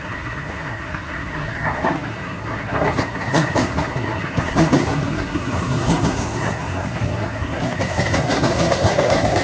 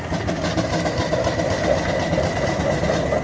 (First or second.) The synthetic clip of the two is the first